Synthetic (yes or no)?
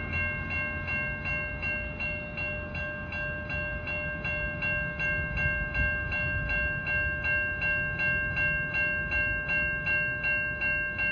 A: no